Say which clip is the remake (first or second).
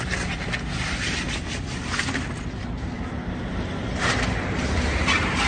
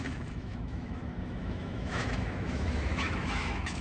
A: second